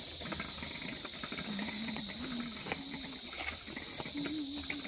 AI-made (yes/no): no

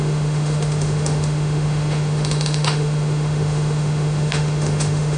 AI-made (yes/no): yes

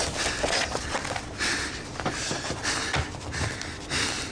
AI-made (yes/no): no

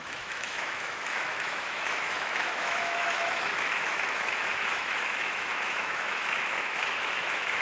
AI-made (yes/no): yes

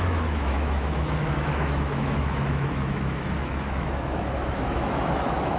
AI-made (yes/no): yes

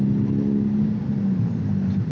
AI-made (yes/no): no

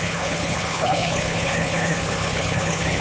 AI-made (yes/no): yes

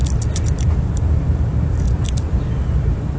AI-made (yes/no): no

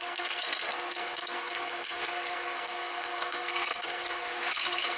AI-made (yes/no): yes